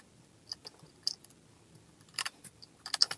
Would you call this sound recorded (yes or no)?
yes